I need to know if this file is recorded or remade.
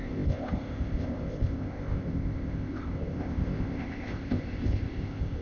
remade